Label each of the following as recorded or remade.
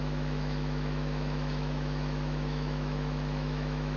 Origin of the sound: remade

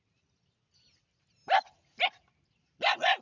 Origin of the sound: recorded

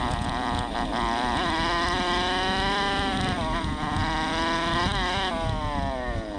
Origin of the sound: recorded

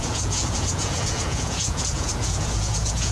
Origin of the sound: remade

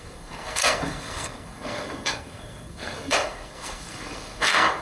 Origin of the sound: remade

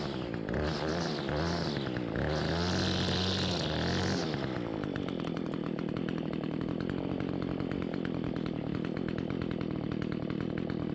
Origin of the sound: recorded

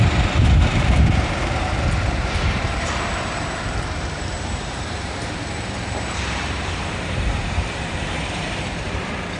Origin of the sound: remade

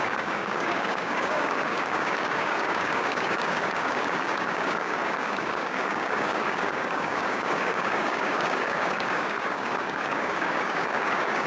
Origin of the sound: remade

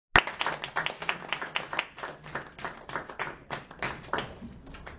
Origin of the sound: recorded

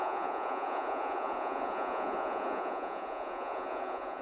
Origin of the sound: remade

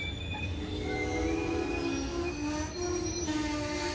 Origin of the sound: recorded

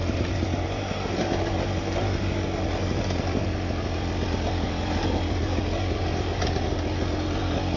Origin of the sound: recorded